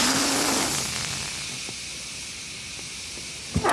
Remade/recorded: recorded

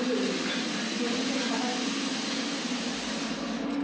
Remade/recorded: recorded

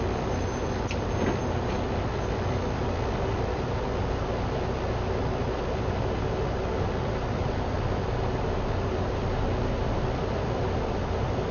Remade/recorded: recorded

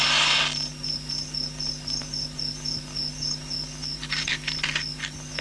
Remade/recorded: recorded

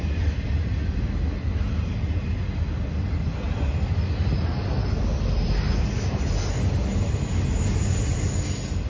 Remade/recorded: recorded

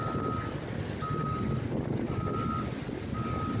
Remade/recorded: recorded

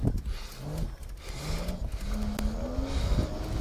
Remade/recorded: recorded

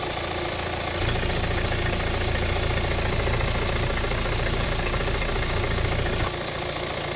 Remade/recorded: recorded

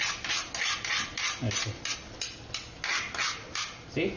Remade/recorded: recorded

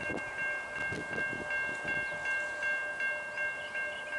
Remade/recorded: recorded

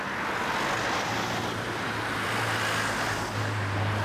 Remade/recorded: recorded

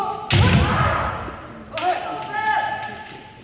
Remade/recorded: recorded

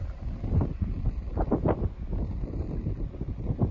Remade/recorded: recorded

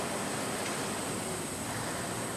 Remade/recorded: recorded